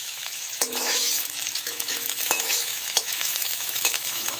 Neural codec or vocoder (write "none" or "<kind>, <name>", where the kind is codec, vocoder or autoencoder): autoencoder, DAC-VAE